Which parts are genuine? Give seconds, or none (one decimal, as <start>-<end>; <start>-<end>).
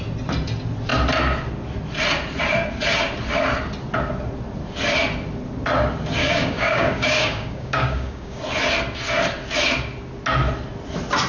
0.0-6.2; 8.4-11.3